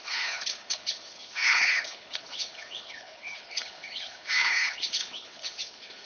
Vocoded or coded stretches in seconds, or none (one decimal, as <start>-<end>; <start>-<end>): 0.0-6.1

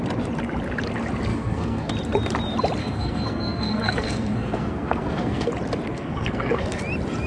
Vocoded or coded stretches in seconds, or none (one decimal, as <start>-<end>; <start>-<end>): 1.3-1.9; 2.8-5.5; 5.9-6.8

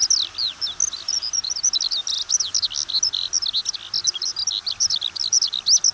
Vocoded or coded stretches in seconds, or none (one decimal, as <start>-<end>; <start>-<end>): none

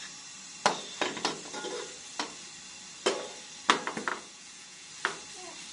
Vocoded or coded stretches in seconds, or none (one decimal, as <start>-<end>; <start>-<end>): 4.1-4.9